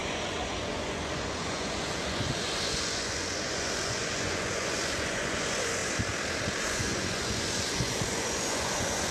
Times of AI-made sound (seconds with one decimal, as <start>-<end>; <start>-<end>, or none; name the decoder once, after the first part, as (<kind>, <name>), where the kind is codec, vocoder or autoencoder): 0.0-5.8 (vocoder, Vocos); 6.6-9.1